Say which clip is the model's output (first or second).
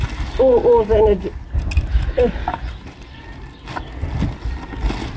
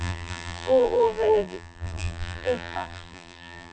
second